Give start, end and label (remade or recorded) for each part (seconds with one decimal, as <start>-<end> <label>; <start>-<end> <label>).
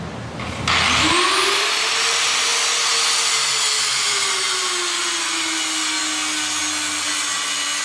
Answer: 0.0-7.8 recorded